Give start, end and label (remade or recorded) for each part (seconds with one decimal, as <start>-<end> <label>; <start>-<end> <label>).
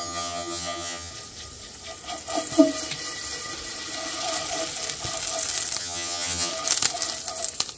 0.0-1.1 remade; 1.1-5.8 recorded; 5.8-6.5 remade; 6.5-7.8 recorded